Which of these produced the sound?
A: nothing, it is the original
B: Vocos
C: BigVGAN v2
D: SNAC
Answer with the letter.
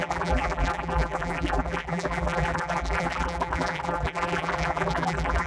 C